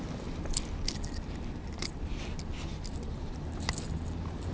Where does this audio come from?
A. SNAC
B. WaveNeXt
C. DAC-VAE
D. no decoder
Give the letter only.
D